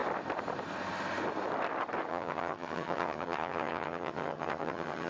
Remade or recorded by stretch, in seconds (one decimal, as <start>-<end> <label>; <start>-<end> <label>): 0.0-2.1 recorded; 2.1-5.1 remade